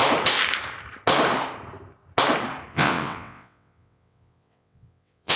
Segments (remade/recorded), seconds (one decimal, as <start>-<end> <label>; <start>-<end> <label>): 0.0-2.7 recorded; 2.7-5.4 remade